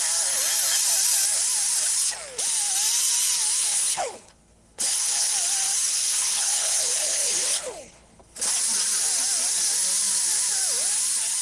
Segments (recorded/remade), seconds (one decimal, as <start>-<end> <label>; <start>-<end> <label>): 0.0-3.7 recorded; 3.7-5.3 remade; 5.3-6.1 recorded; 6.1-8.5 remade; 8.5-11.4 recorded